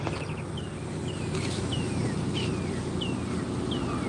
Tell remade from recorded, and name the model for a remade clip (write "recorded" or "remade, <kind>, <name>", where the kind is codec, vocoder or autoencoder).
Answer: recorded